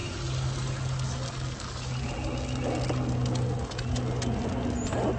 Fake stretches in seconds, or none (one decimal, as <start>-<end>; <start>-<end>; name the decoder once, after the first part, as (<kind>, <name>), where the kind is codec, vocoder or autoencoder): none